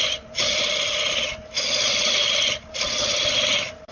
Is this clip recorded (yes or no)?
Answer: yes